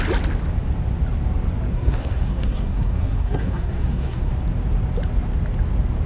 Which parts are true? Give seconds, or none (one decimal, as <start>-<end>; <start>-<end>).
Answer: 0.0-1.7; 4.3-6.1